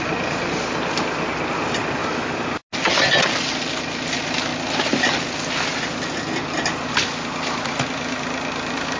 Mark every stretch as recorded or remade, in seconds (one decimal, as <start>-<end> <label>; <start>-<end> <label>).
0.0-2.0 recorded; 2.0-2.6 remade; 2.6-9.0 recorded